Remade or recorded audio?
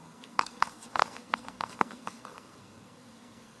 remade